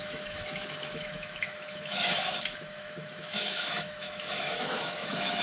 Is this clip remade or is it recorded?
remade